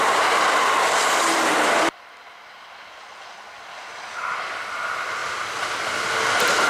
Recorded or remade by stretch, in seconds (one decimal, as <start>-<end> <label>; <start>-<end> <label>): 0.0-6.7 recorded